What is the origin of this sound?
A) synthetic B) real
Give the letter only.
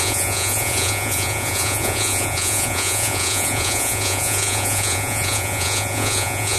A